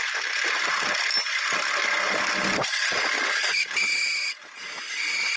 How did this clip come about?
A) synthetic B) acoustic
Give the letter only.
B